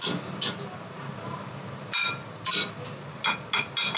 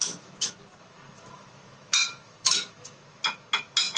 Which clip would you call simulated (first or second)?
second